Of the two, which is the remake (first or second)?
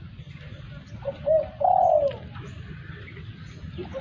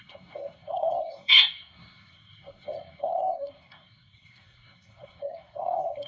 second